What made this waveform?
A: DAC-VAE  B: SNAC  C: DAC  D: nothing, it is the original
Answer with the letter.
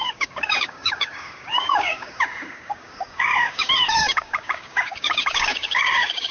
C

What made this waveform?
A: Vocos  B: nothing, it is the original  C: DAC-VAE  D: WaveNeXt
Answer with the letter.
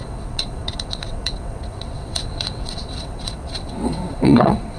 D